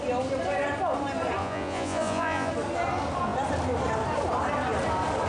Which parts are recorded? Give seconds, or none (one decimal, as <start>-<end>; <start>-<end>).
0.0-1.4; 2.5-5.3